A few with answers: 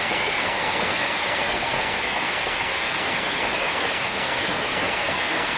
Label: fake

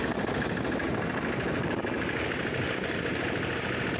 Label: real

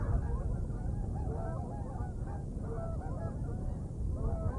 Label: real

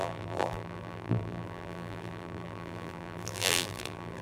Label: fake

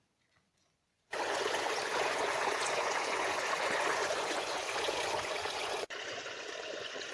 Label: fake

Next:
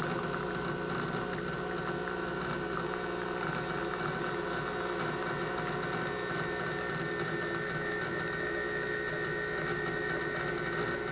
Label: real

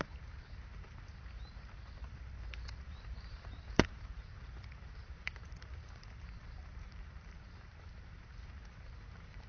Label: fake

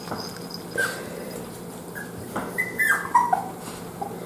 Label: real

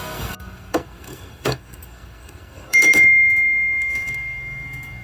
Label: fake